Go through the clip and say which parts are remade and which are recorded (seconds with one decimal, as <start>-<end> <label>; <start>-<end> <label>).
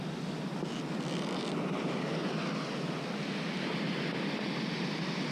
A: 0.0-5.3 recorded